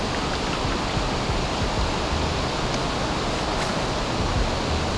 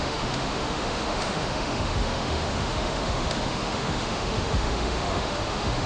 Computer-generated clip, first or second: second